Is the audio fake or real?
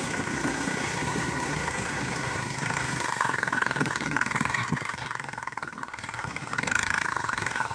fake